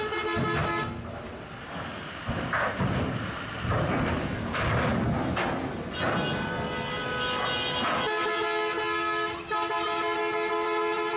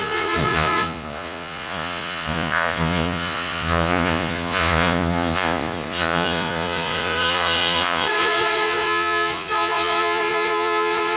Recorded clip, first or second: first